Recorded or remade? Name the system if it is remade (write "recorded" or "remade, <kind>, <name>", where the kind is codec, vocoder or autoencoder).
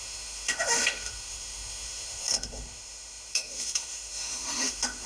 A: remade, autoencoder, DAC-VAE